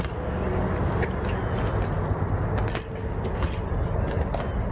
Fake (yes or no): no